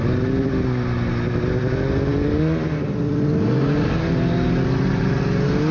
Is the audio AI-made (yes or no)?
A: no